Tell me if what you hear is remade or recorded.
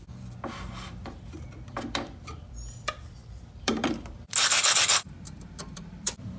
remade